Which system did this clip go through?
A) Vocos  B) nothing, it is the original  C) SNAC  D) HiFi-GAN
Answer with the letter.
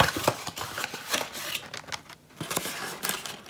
B